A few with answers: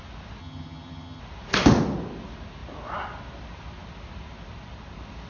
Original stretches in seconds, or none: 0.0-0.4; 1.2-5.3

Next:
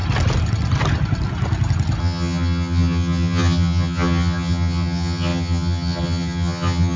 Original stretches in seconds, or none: 0.0-2.0

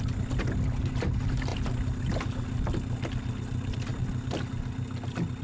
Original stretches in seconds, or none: 0.0-5.4